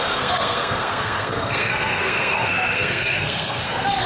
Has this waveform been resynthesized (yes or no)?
yes